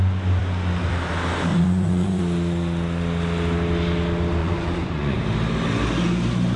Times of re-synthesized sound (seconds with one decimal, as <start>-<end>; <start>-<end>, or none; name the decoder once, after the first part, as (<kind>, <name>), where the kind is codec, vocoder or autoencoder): 1.5-2.2 (vocoder, Vocos); 4.4-5.2